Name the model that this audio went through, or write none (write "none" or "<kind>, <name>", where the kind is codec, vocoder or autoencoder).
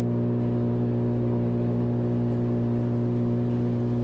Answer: none